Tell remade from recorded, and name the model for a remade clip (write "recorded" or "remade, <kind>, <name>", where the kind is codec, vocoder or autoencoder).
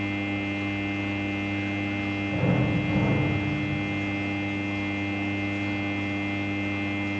recorded